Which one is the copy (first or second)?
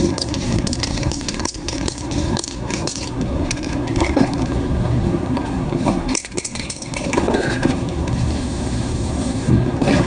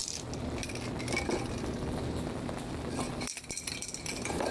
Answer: first